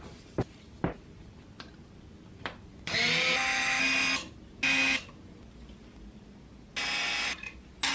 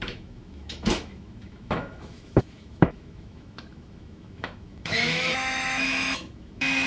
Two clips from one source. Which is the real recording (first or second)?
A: first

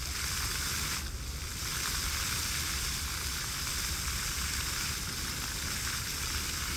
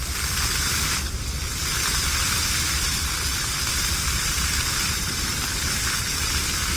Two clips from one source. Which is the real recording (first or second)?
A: first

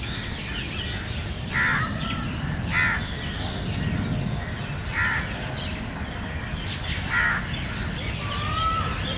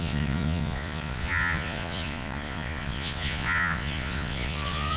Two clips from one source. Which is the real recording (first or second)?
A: first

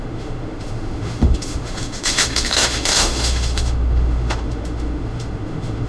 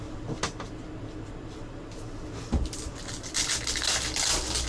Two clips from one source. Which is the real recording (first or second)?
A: second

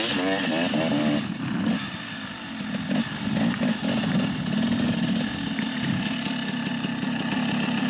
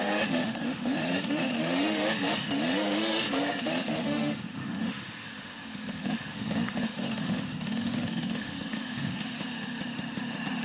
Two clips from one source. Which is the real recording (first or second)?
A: first